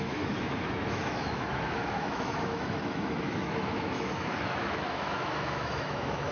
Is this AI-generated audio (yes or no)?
yes